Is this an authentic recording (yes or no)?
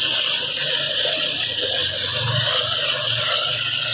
yes